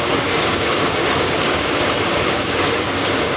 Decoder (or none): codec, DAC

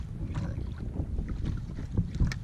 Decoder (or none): none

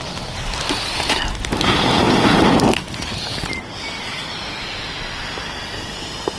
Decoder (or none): vocoder, BigVGAN v2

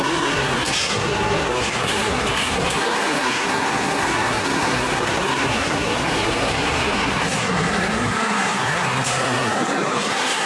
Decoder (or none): codec, SNAC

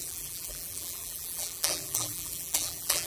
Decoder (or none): vocoder, BigVGAN v2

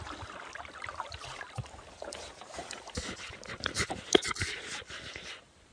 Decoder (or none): none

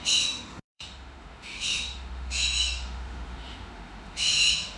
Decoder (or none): autoencoder, DAC-VAE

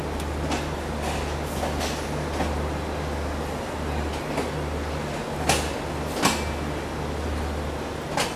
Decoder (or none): none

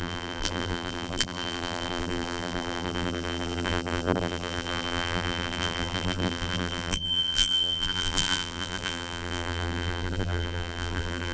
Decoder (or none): vocoder, BigVGAN v2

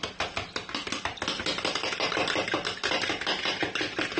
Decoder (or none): none